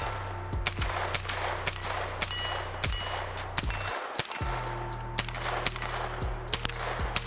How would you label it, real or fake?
real